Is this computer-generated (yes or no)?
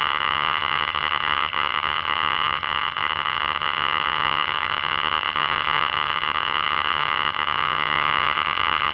yes